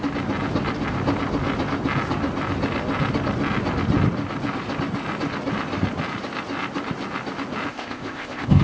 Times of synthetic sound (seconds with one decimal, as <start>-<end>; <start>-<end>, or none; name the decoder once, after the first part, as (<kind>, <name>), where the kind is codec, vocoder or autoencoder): 7.7-8.6 (codec, ZipCodec)